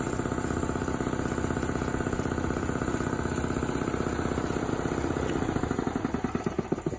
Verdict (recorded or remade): recorded